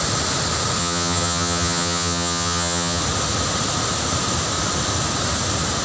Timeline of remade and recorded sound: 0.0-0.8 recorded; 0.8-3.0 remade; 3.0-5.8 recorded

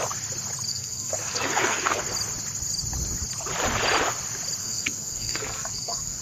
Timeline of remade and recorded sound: 0.0-0.7 recorded; 0.7-2.0 remade; 2.0-4.6 recorded; 4.6-6.2 remade

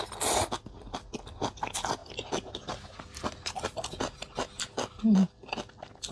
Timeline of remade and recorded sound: 0.0-6.1 recorded

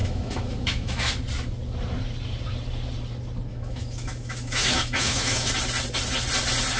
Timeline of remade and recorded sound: 0.0-1.1 remade; 1.1-3.5 recorded; 3.5-5.5 remade; 5.5-6.8 recorded

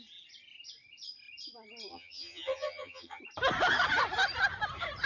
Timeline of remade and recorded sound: 0.0-1.9 recorded; 1.9-3.2 remade; 3.2-5.1 recorded

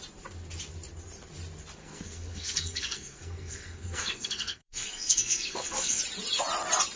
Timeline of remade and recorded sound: 0.0-1.8 recorded; 1.8-6.0 remade; 6.0-7.0 recorded

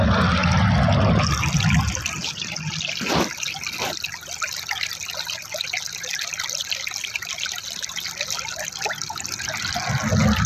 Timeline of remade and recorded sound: 0.0-10.5 recorded